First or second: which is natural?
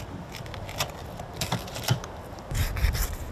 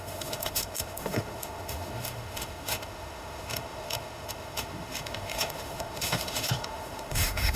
first